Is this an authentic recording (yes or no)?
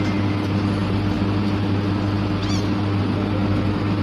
yes